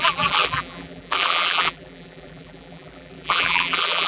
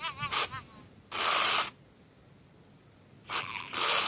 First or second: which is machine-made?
first